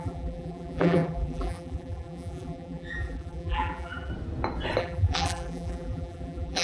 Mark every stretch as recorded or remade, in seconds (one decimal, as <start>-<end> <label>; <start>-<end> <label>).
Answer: 0.0-4.1 remade; 4.1-4.8 recorded; 4.8-6.6 remade